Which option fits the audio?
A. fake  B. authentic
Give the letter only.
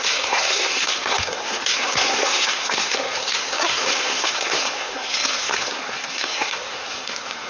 A